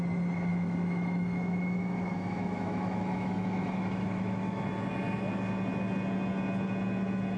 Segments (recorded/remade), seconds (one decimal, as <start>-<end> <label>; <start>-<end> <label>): 0.0-0.5 recorded; 0.5-4.6 remade; 4.6-7.4 recorded